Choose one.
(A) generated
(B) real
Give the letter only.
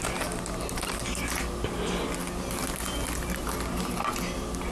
B